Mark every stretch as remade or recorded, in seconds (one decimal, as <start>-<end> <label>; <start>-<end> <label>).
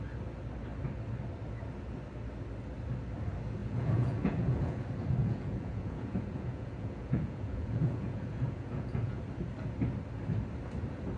0.0-3.6 recorded; 3.6-4.8 remade; 4.8-5.2 recorded; 5.2-9.2 remade; 9.2-11.2 recorded